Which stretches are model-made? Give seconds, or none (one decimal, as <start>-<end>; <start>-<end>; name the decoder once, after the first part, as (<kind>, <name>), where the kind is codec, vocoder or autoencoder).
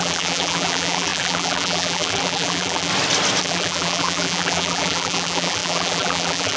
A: 0.0-2.9 (vocoder, BigVGAN v2); 3.4-6.6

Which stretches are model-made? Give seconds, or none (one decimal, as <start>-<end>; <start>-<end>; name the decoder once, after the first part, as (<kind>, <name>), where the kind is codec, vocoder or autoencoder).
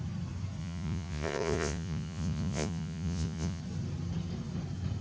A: 0.6-3.6 (vocoder, Vocos)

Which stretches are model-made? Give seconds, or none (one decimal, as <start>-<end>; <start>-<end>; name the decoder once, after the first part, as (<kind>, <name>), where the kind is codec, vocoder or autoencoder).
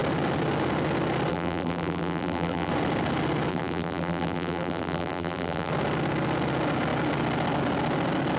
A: 1.3-2.7 (vocoder, BigVGAN v2); 3.5-5.7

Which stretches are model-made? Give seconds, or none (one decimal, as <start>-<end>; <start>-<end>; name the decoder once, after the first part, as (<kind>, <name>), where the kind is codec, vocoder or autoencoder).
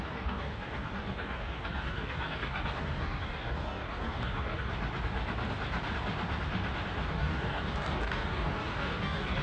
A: 0.0-4.7 (codec, DAC); 7.1-9.4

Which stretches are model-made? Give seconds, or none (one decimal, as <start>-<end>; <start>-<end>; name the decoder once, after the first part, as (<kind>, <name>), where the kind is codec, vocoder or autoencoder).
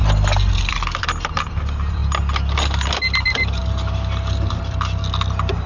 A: 0.5-2.0 (vocoder, BigVGAN v2); 2.8-5.7